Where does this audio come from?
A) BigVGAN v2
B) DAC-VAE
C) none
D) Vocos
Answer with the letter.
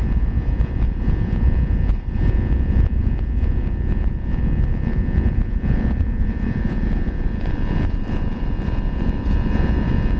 D